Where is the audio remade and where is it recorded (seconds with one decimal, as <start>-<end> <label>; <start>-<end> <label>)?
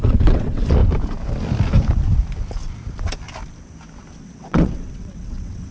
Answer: 0.0-0.8 remade; 0.8-4.2 recorded; 4.2-5.7 remade